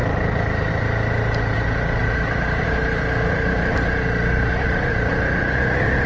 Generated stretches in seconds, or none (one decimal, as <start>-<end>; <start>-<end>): none